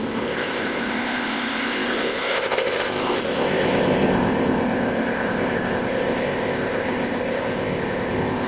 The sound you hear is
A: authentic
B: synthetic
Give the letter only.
B